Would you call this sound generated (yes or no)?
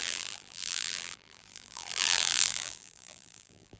yes